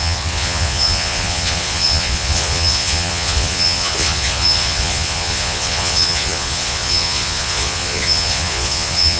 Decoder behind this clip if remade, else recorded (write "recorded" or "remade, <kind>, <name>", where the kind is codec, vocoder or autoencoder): remade, vocoder, Vocos